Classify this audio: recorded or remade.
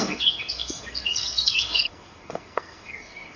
remade